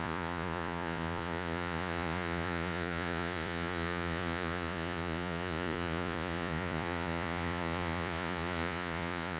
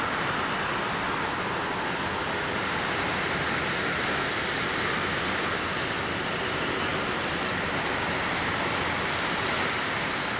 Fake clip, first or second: first